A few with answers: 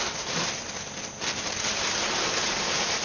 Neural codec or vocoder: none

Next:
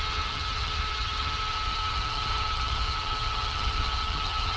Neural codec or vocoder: vocoder, HiFi-GAN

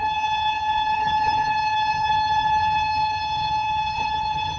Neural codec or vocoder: vocoder, HiFi-GAN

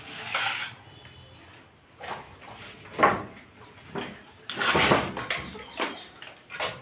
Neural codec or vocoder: none